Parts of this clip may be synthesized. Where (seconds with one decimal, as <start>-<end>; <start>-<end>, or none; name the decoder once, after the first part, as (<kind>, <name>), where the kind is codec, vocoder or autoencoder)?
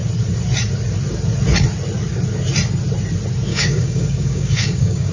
3.5-5.1 (codec, DAC)